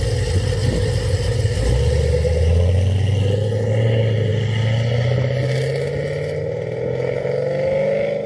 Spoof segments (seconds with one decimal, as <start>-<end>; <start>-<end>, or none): none